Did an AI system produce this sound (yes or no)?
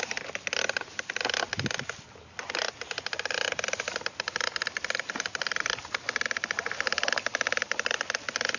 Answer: no